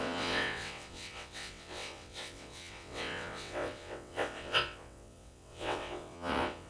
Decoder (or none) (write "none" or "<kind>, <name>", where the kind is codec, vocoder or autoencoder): vocoder, WaveNeXt